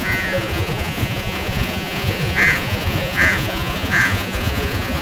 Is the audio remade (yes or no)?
yes